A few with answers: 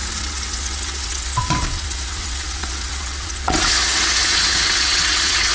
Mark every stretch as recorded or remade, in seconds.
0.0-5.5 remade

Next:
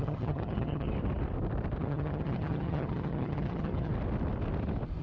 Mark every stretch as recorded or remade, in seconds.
0.0-0.9 remade; 0.9-1.8 recorded; 1.8-3.9 remade; 3.9-5.0 recorded

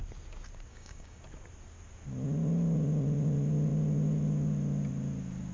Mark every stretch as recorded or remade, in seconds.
0.0-0.7 recorded; 0.7-1.2 remade; 1.2-5.5 recorded